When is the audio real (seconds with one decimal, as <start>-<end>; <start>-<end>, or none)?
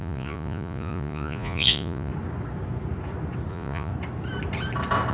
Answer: 2.1-3.5; 3.9-5.1